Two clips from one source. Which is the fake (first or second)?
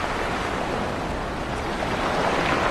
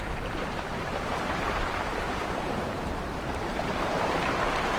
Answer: second